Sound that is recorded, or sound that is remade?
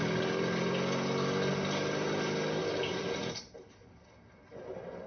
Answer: recorded